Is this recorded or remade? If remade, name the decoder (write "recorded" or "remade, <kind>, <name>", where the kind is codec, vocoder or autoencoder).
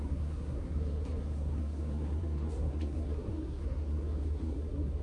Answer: remade, codec, SNAC